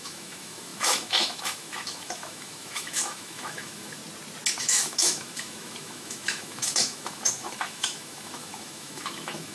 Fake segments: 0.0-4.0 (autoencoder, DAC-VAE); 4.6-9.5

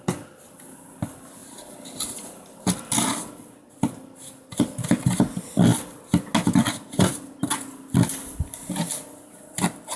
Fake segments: none

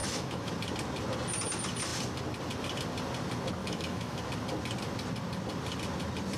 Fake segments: 0.0-0.5 (autoencoder, DAC-VAE); 3.6-4.2